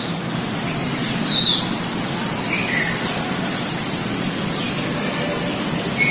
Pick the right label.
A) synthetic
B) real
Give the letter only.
B